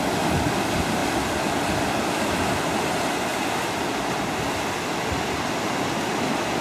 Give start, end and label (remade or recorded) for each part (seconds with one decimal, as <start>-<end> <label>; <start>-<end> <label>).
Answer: 0.0-6.6 recorded